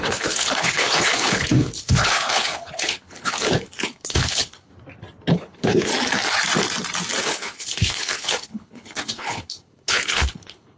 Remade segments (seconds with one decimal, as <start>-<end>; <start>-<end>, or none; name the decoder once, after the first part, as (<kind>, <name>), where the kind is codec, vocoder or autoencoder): 0.0-4.7 (codec, HILCodec); 5.3-5.9; 7.2-10.8